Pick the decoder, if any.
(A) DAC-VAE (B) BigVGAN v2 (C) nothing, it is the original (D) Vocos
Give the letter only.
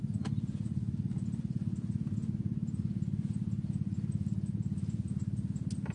C